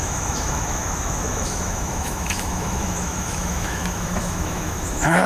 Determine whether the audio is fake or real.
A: fake